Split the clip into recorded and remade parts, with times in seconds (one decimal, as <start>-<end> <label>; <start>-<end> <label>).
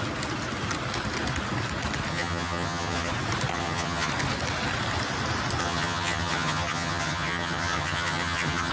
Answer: 0.0-2.1 recorded; 2.1-3.1 remade; 3.1-3.5 recorded; 3.5-4.1 remade; 4.1-5.6 recorded; 5.6-8.7 remade